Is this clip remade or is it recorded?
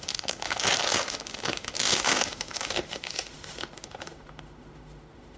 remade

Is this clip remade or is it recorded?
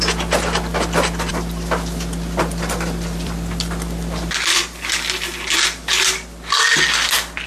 recorded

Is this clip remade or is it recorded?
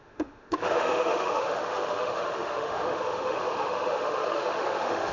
remade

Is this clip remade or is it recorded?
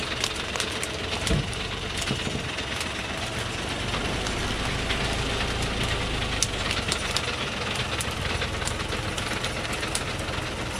recorded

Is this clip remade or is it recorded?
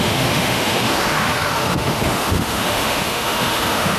remade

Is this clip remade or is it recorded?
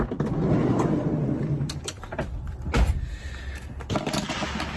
recorded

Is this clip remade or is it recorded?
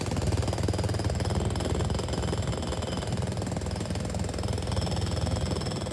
recorded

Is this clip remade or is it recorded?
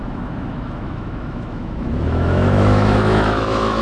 remade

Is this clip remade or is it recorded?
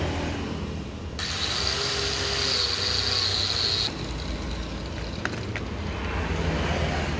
recorded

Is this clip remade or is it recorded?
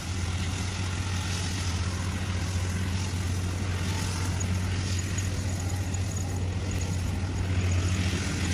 recorded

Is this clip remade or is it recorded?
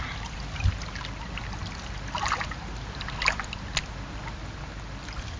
recorded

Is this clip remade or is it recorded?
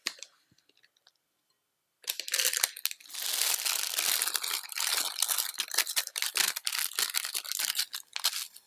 recorded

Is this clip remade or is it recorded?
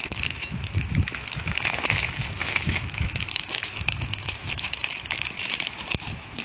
remade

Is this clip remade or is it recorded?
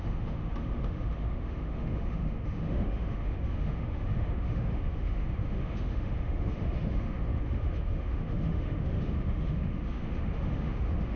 remade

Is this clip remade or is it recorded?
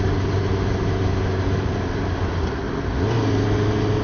recorded